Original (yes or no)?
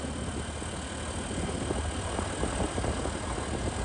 yes